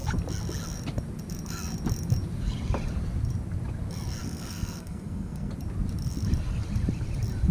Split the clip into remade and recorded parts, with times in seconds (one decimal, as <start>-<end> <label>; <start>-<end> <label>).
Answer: 0.0-4.2 recorded; 4.2-5.5 remade; 5.5-7.5 recorded